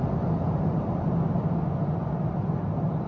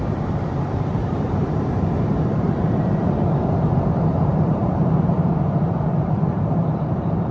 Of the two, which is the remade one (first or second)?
second